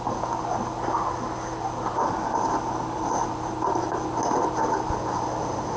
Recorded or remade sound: recorded